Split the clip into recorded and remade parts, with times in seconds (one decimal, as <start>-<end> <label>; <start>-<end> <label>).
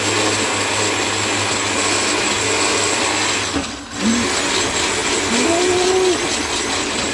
0.0-7.1 recorded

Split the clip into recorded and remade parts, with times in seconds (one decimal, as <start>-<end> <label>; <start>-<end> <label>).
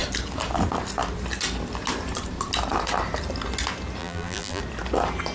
0.0-4.0 recorded; 4.0-4.6 remade; 4.6-5.3 recorded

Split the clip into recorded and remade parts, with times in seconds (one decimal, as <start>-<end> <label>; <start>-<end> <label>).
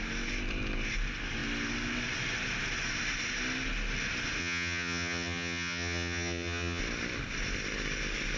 0.0-4.4 recorded; 4.4-6.8 remade; 6.8-8.4 recorded